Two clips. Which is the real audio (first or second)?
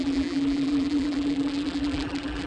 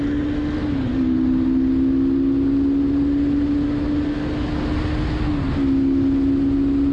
second